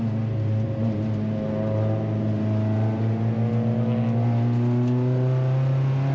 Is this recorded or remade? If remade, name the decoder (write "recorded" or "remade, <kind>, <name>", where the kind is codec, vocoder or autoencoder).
recorded